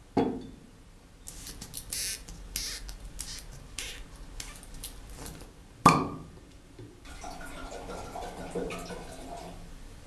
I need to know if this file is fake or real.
real